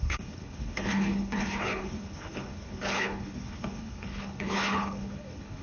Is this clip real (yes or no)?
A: no